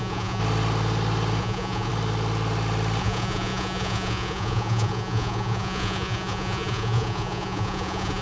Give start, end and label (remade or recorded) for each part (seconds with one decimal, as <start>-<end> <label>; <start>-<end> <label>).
0.0-0.4 remade; 0.4-1.4 recorded; 1.4-1.9 remade; 1.9-3.0 recorded; 3.0-8.2 remade